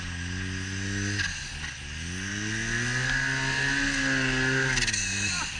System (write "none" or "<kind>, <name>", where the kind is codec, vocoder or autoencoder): none